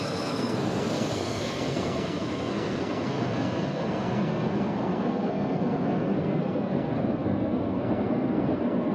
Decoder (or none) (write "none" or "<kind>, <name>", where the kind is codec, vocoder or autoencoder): codec, SNAC